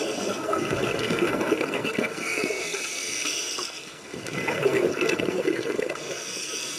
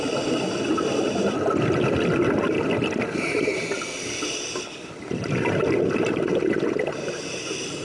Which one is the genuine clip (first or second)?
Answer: second